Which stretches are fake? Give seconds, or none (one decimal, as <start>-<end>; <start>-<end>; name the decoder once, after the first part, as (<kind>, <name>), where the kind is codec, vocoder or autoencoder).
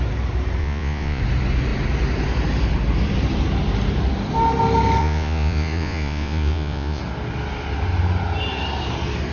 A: 0.6-1.2 (vocoder, Vocos); 5.0-7.0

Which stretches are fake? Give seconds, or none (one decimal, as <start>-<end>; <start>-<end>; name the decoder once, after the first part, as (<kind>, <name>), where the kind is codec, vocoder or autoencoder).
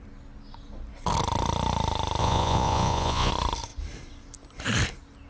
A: 2.2-3.3 (vocoder, Vocos)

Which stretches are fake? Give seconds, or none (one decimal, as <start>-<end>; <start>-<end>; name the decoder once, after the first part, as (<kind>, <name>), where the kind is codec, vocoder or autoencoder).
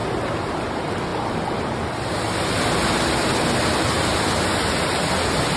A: none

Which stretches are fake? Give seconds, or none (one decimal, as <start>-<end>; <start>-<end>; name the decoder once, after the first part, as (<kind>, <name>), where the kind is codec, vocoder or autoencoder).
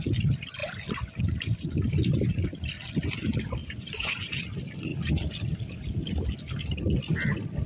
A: 3.6-4.4 (vocoder, Vocos)